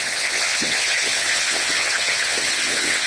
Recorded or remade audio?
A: remade